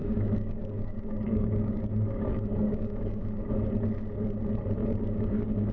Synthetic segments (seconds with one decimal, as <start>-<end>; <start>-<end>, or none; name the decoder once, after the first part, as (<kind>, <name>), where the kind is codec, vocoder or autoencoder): 0.0-3.4 (codec, DAC); 4.8-5.7